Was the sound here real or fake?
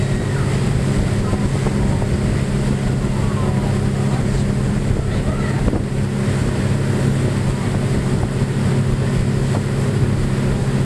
real